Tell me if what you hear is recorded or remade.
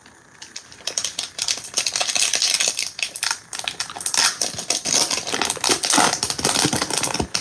recorded